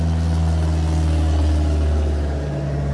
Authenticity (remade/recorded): recorded